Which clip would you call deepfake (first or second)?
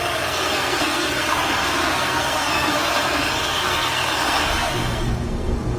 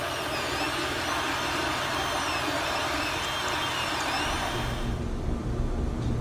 first